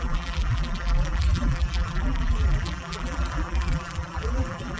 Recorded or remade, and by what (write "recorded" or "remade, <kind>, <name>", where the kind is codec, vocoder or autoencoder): remade, vocoder, BigVGAN v2